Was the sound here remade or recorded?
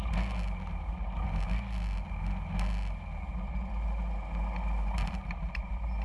recorded